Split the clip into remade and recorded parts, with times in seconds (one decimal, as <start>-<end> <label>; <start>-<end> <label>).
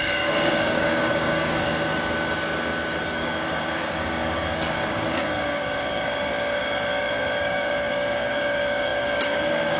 0.0-1.9 remade; 1.9-3.0 recorded; 3.0-9.8 remade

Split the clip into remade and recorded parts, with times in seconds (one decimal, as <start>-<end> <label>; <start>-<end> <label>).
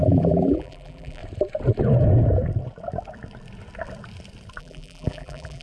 0.0-1.2 remade; 1.2-4.6 recorded; 4.6-5.6 remade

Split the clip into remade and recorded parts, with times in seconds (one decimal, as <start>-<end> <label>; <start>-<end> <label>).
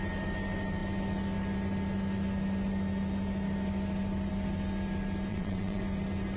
0.0-5.3 recorded; 5.3-5.8 remade; 5.8-6.4 recorded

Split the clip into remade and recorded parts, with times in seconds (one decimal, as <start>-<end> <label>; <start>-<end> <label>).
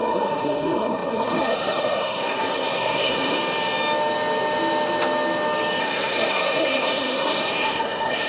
0.0-3.4 remade; 3.4-5.8 recorded; 5.8-8.3 remade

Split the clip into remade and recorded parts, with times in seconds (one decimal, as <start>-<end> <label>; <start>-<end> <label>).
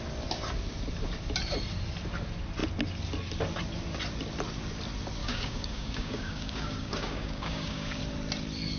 0.0-5.2 recorded; 5.2-8.0 remade; 8.0-8.8 recorded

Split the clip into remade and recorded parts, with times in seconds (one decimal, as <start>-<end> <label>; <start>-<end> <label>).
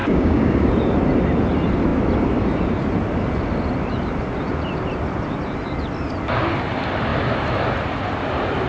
0.0-0.7 remade; 0.7-8.7 recorded